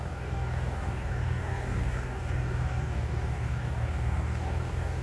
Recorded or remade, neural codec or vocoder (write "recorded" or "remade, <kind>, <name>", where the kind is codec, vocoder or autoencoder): remade, codec, DAC